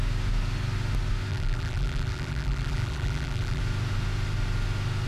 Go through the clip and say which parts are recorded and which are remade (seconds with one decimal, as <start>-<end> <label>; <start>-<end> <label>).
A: 0.0-1.3 recorded; 1.3-3.6 remade; 3.6-5.1 recorded